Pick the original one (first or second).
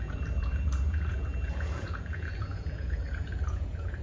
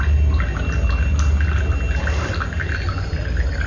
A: second